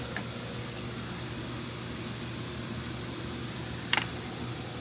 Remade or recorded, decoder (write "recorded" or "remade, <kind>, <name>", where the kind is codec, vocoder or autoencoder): recorded